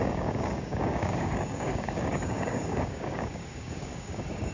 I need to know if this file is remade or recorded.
remade